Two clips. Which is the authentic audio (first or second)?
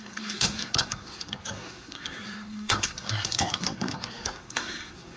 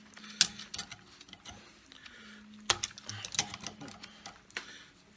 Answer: second